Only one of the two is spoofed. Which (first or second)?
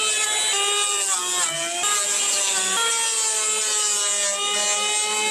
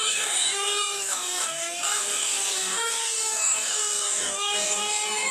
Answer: second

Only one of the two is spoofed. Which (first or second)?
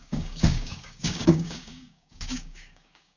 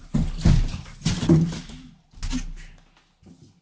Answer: first